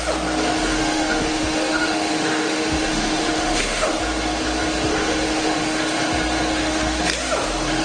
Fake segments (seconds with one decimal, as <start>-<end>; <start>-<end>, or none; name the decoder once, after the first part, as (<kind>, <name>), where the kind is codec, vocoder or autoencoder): 0.7-3.9 (autoencoder, DAC-VAE); 4.9-5.8; 6.5-7.0